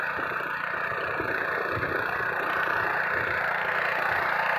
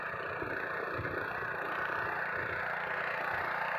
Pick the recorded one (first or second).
second